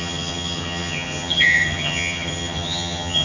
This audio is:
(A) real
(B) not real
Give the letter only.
B